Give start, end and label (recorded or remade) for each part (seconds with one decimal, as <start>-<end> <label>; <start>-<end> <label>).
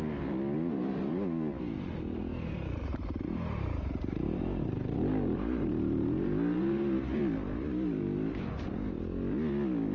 0.0-2.3 recorded; 2.3-7.2 remade; 7.2-9.9 recorded